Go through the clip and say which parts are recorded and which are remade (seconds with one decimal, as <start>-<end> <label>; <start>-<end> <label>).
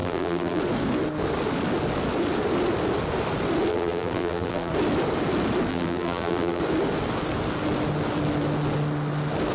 0.0-0.6 remade; 0.6-3.7 recorded; 3.7-4.7 remade; 4.7-5.7 recorded; 5.7-6.6 remade; 6.6-9.5 recorded